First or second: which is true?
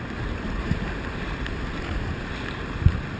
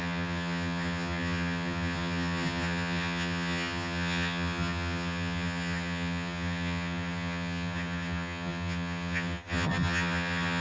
first